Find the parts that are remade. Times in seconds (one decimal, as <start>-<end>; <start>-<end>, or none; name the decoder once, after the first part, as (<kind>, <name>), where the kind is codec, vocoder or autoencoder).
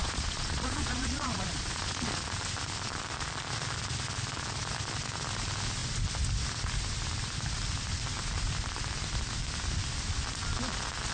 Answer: 0.0-2.2 (vocoder, Vocos)